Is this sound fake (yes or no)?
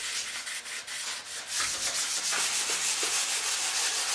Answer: no